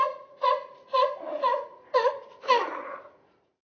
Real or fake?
fake